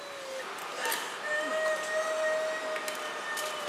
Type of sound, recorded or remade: recorded